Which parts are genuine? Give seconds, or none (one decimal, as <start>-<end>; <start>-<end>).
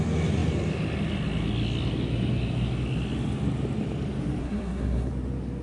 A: 0.0-4.4; 5.1-5.6